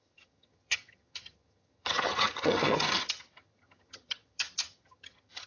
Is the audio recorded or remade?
remade